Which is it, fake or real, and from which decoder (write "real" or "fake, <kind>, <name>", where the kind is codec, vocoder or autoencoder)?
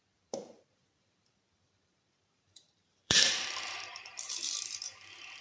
fake, vocoder, BigVGAN v2